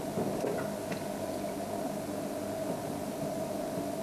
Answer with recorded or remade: recorded